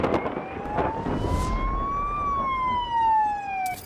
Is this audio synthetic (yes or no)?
no